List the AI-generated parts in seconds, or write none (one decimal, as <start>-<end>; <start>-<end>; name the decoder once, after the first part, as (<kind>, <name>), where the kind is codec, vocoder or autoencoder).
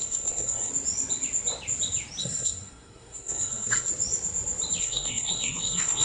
0.0-0.7 (codec, SNAC); 2.2-3.9; 4.8-6.0